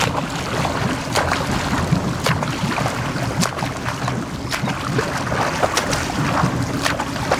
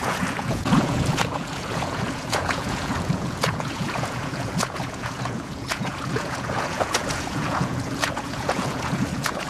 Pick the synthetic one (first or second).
second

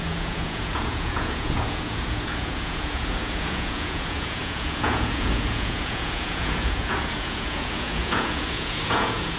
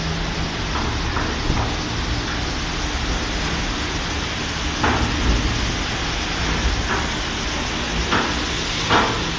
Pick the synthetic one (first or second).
first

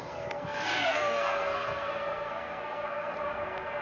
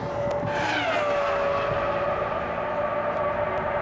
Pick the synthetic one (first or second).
first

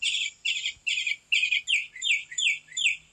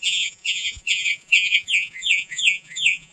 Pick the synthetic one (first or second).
second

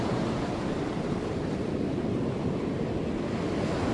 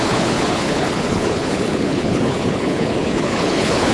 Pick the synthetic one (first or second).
second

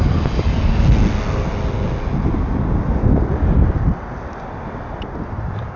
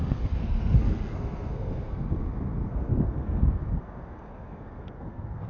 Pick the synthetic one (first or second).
second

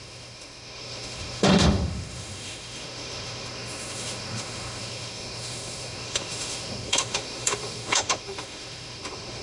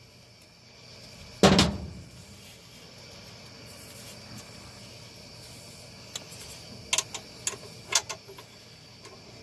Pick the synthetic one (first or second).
first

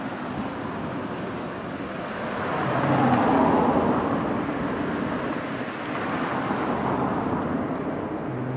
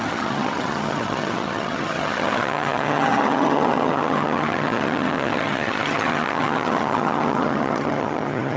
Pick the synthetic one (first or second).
second